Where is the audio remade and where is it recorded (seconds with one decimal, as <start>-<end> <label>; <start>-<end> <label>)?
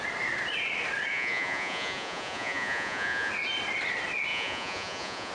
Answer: 0.0-1.1 recorded; 1.1-3.3 remade; 3.3-4.3 recorded; 4.3-5.3 remade